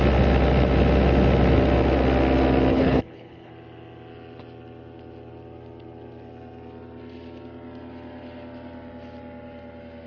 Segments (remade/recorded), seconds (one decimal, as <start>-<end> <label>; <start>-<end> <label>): 0.0-2.7 recorded; 2.7-3.5 remade; 3.5-10.1 recorded